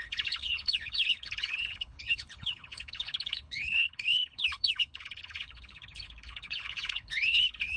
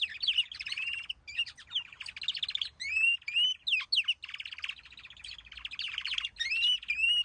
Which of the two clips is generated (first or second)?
first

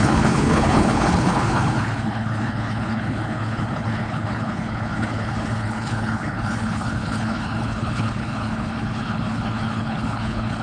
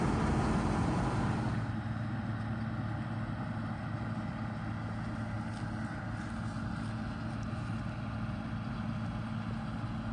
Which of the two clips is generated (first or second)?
first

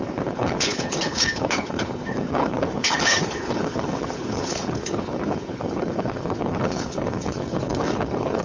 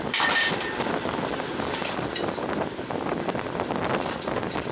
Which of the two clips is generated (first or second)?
first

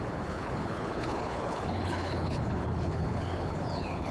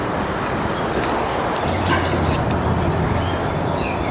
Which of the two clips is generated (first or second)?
first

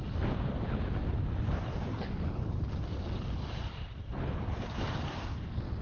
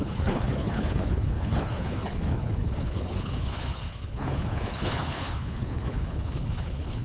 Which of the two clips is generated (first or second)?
second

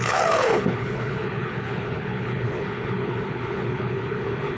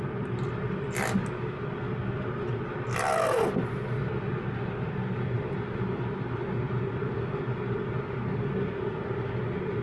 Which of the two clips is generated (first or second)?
first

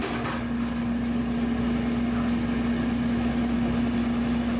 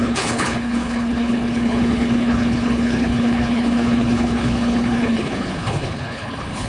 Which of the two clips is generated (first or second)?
second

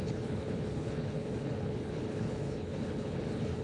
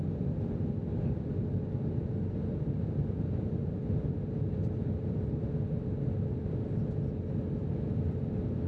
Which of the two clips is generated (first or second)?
first